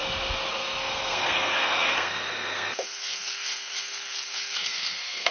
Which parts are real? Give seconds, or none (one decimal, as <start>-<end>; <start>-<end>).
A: 0.0-0.5